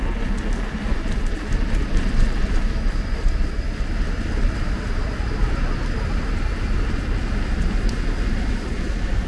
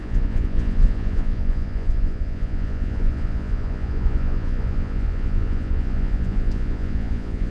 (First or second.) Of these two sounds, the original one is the first